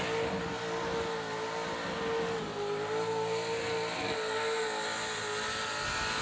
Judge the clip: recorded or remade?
recorded